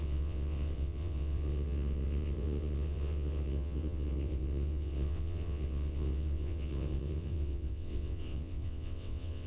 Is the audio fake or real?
fake